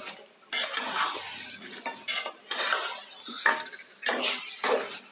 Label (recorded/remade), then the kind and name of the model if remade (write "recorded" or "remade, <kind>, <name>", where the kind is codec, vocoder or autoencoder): recorded